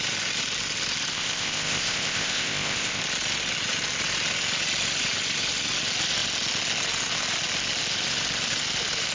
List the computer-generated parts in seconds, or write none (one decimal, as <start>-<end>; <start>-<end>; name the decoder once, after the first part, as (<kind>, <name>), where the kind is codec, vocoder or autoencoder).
1.1-3.0 (codec, ZipCodec)